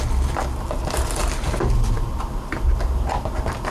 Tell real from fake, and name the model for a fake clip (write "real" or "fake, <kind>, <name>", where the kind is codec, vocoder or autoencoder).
real